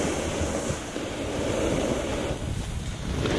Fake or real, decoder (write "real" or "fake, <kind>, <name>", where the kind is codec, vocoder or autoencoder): real